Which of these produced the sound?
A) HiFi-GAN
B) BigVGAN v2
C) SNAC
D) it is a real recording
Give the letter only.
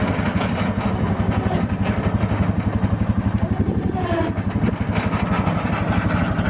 D